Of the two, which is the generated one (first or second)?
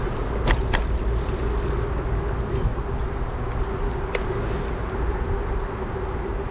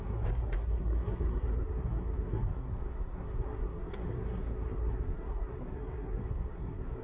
second